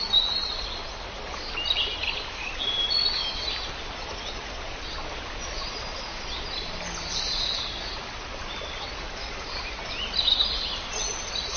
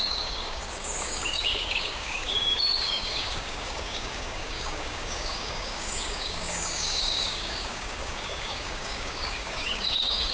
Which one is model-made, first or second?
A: second